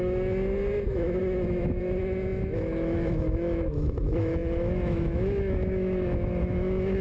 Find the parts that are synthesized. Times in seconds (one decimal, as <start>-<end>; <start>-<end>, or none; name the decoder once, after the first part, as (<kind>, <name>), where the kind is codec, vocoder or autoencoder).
0.0-7.0 (autoencoder, DAC-VAE)